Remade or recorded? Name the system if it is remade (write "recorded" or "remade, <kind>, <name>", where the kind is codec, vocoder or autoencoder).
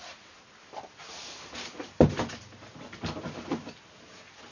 recorded